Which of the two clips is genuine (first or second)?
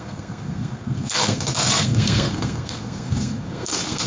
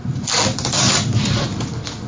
second